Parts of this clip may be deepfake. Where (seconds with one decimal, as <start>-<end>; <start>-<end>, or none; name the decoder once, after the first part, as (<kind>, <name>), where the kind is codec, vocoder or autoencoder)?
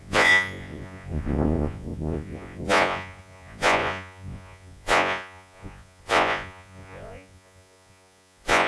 0.0-8.7 (vocoder, Vocos)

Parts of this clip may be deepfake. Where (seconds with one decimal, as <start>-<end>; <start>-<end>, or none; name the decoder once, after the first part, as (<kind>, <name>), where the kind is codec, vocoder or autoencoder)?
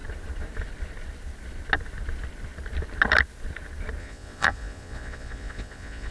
4.0-6.1 (vocoder, Vocos)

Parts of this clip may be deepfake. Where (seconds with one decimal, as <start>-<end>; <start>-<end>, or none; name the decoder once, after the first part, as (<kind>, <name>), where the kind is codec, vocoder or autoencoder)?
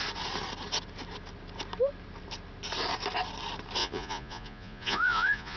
3.8-5.6 (vocoder, Vocos)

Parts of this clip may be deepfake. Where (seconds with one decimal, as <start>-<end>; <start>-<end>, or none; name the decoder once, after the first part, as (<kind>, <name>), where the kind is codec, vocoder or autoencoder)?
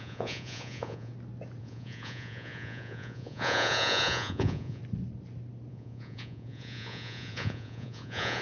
0.0-1.1 (vocoder, Vocos); 1.6-4.8; 5.7-8.4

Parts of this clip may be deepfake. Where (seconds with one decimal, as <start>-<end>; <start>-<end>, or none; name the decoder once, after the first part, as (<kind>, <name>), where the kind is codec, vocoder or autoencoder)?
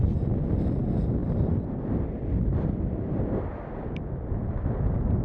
none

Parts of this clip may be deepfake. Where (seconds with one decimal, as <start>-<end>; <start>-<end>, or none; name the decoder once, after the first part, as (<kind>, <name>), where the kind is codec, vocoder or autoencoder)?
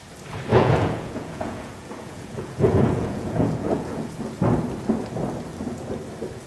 0.5-4.1 (vocoder, Vocos)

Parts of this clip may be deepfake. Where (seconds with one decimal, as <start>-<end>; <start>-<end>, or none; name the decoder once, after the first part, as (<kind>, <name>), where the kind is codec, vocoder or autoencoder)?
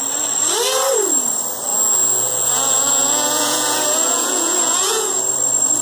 1.7-5.2 (vocoder, Vocos)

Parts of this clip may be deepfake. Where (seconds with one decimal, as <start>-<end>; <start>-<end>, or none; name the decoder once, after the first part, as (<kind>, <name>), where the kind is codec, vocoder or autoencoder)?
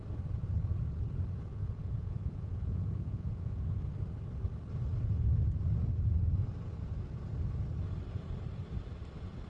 1.5-3.8 (vocoder, Vocos)